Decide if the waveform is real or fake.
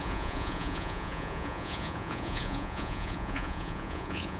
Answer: fake